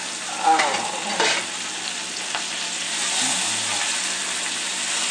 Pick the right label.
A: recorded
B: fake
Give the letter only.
A